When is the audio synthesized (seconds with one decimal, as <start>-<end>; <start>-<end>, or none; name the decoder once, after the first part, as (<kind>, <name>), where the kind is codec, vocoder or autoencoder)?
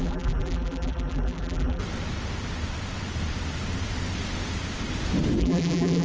0.0-1.8 (vocoder, BigVGAN v2); 5.4-6.0